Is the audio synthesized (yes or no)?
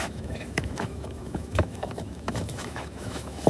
yes